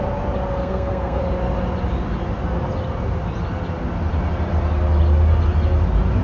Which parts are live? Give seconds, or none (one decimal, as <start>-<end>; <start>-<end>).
0.0-0.6; 1.2-6.2